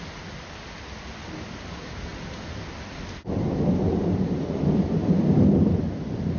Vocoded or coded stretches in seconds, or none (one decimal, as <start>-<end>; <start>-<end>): 2.1-5.5